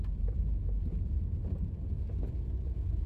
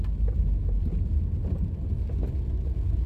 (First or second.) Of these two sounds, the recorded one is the second